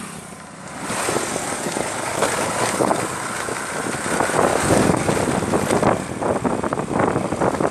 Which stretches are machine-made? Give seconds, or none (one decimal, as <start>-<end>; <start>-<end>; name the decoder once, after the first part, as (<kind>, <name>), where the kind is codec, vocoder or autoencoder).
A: 1.4-3.6 (codec, DAC); 4.5-5.1